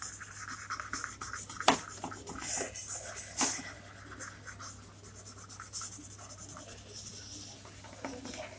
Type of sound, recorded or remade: recorded